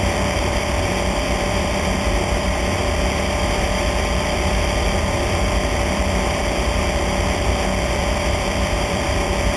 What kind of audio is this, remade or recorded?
remade